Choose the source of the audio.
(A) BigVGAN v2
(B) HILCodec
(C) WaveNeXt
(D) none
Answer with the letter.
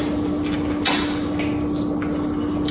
D